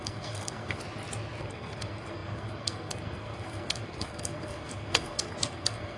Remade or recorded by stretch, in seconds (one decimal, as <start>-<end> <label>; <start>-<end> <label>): 0.0-0.8 remade; 0.8-1.4 recorded; 1.4-6.0 remade